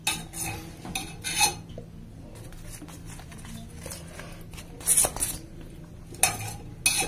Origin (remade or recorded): recorded